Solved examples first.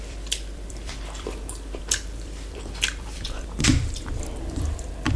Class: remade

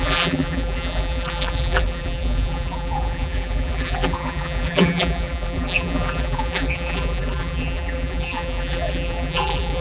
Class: remade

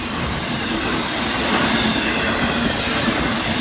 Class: remade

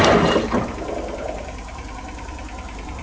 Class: recorded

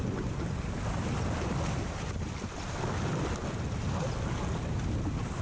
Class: recorded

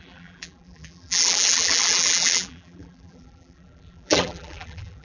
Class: remade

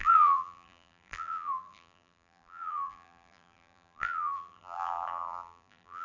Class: remade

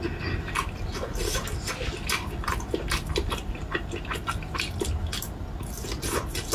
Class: recorded